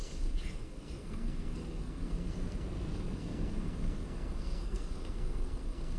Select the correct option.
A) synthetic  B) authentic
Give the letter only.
A